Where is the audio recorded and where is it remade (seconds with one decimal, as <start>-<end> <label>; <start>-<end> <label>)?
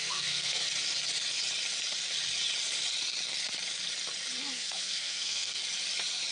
0.0-0.6 remade; 0.6-4.4 recorded; 4.4-5.6 remade; 5.6-6.3 recorded